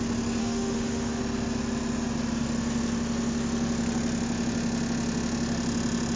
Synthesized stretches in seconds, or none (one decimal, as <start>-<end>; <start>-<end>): 0.4-1.2